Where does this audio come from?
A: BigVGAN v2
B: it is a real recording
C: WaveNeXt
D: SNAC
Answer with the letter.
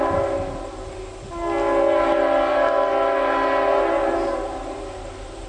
B